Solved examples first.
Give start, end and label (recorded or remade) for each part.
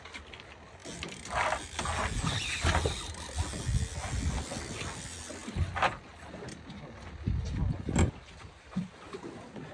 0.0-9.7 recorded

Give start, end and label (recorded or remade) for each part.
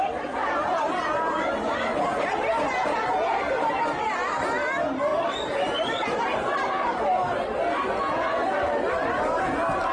0.0-0.4 recorded; 0.4-4.0 remade; 4.0-5.1 recorded; 5.1-7.2 remade; 7.2-9.9 recorded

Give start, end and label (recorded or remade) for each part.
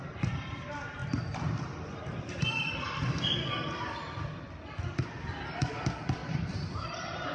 0.0-6.2 recorded; 6.2-7.3 remade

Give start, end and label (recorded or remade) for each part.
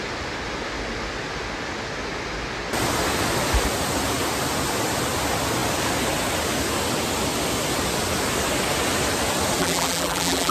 0.0-9.6 recorded; 9.6-10.5 remade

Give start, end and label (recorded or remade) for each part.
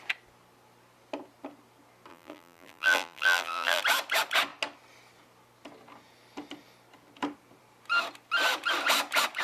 0.0-2.1 recorded; 2.1-3.8 remade; 3.8-9.4 recorded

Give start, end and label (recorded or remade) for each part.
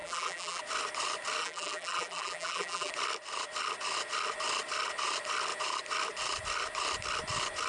0.0-0.6 remade; 0.6-1.4 recorded; 1.4-2.9 remade; 2.9-7.7 recorded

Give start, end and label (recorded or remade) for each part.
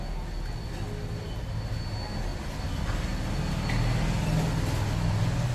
0.0-5.5 recorded